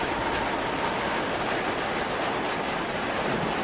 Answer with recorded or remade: recorded